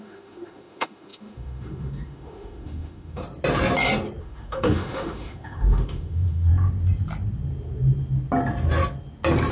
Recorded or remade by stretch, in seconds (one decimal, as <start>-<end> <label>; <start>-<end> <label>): 0.0-3.2 remade; 3.2-4.2 recorded; 4.2-6.5 remade; 6.5-9.5 recorded